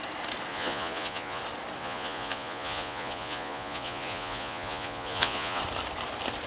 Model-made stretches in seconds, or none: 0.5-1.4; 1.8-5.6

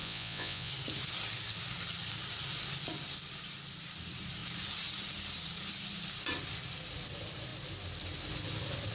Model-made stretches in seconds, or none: 0.0-0.7

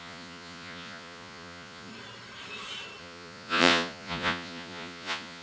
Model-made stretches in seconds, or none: 0.0-1.9; 3.0-5.4

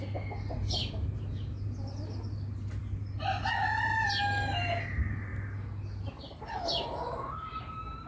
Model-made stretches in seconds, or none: none

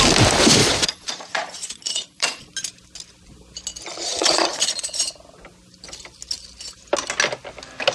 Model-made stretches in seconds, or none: 0.6-2.4; 4.0-5.0

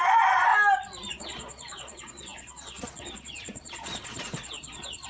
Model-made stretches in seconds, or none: 0.0-0.5; 1.1-5.1

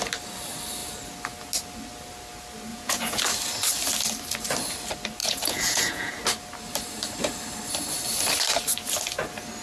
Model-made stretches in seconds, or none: 2.7-3.2; 5.2-6.2